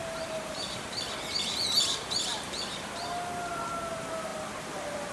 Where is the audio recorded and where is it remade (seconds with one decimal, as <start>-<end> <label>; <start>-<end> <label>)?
0.0-1.1 remade; 1.1-2.3 recorded; 2.3-3.1 remade; 3.1-4.3 recorded; 4.3-5.1 remade